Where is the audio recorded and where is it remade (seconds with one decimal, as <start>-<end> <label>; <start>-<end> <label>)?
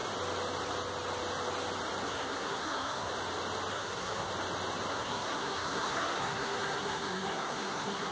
0.0-2.0 recorded; 2.0-3.1 remade; 3.1-3.7 recorded; 3.7-4.3 remade; 4.3-4.9 recorded; 4.9-8.1 remade